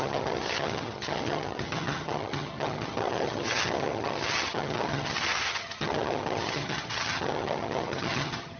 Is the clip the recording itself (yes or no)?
no